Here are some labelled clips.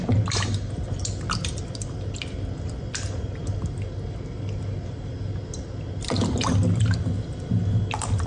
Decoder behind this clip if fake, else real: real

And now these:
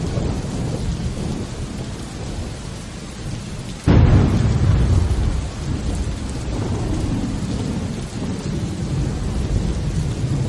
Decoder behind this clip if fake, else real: real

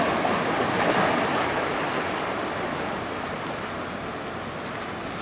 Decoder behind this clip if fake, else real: real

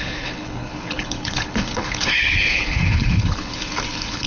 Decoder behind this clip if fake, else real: fake, codec, HILCodec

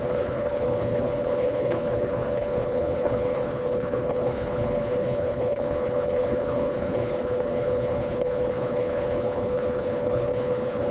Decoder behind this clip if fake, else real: fake, codec, HILCodec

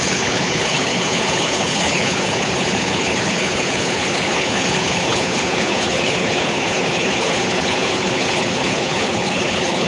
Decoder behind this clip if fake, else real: fake, codec, HILCodec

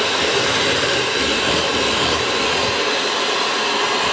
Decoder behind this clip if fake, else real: real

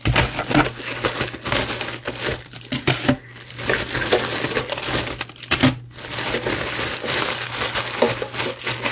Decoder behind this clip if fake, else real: real